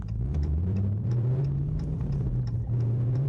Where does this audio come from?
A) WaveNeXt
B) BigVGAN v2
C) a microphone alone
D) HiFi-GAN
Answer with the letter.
B